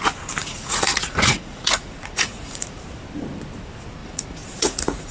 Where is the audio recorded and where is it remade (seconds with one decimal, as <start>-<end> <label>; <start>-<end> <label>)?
0.0-0.4 recorded; 0.4-2.8 remade; 2.8-4.0 recorded; 4.0-5.1 remade